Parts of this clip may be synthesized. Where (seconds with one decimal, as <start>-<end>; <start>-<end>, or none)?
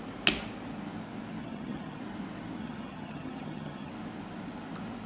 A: 1.4-2.0; 2.6-3.9